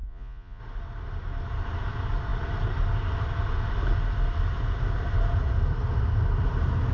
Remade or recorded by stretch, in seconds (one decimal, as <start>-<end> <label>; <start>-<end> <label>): 0.0-0.6 remade; 0.6-6.9 recorded